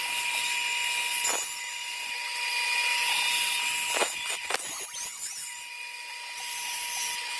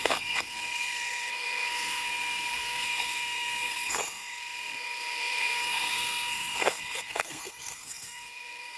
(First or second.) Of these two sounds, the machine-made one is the second